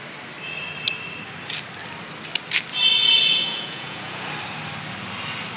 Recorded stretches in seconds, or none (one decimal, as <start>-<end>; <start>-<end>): 0.0-3.0; 4.3-5.6